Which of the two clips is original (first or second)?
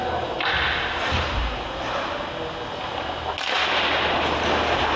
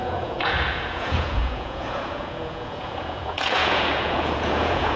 first